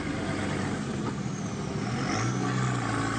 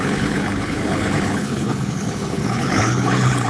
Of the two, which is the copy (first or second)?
second